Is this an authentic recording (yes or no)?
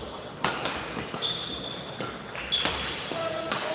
yes